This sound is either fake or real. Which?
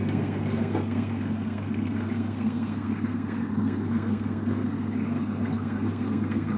fake